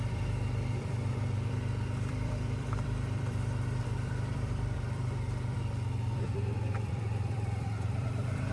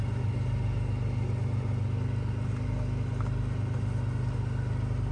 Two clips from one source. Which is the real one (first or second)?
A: second